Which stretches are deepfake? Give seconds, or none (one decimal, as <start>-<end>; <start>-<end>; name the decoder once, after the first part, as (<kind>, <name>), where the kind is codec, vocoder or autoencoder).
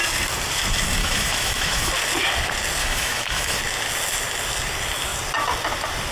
1.0-1.9 (autoencoder, DAC-VAE); 2.8-3.6